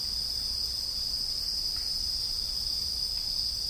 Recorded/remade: recorded